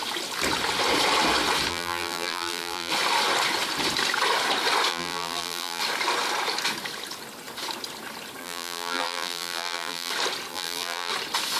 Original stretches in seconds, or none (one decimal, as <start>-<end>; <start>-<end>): 0.0-1.7; 2.9-4.9; 5.8-8.4; 10.1-10.5; 11.1-11.6